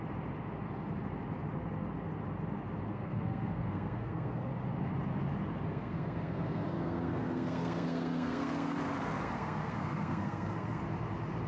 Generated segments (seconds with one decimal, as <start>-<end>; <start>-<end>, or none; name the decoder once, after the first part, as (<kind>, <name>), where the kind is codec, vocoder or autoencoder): 2.9-4.5 (codec, SNAC); 5.7-10.8